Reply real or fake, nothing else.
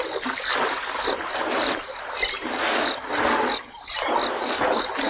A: real